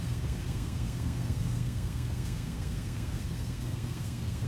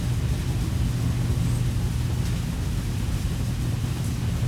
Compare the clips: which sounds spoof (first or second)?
first